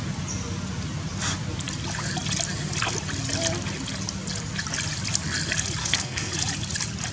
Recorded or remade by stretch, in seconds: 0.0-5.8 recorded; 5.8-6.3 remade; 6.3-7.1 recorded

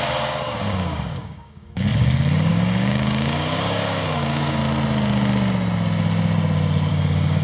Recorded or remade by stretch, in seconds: 0.0-4.6 remade; 4.6-6.9 recorded; 6.9-7.4 remade